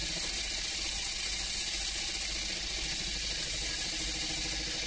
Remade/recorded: recorded